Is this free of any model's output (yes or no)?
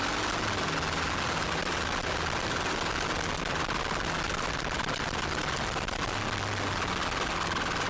yes